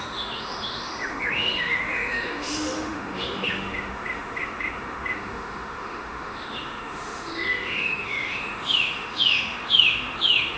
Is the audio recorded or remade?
remade